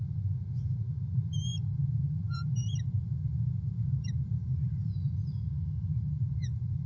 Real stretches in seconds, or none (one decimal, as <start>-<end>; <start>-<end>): 0.0-1.5; 4.9-5.9